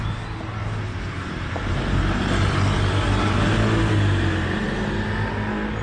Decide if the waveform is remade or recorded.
recorded